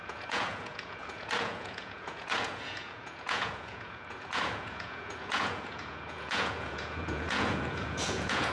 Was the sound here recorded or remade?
remade